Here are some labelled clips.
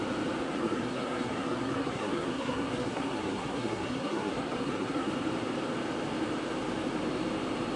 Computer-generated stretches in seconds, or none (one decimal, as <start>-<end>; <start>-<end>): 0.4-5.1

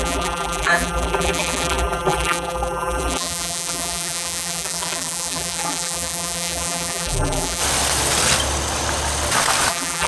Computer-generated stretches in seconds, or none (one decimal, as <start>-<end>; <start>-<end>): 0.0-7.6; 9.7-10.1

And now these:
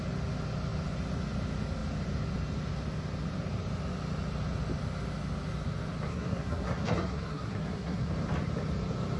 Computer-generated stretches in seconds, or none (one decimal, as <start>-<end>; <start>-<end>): 6.1-8.1